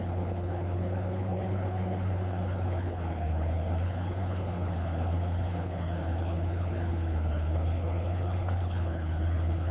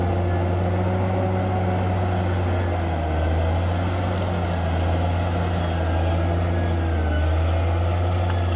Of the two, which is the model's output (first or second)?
first